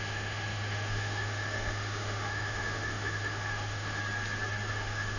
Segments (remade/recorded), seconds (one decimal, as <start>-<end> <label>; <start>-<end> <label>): 0.0-4.0 remade; 4.0-4.7 recorded; 4.7-5.2 remade